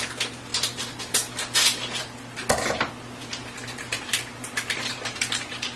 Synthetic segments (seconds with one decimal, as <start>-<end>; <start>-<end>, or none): 3.6-5.8

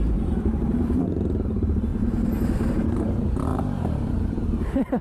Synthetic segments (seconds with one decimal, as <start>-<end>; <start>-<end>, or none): 0.0-5.0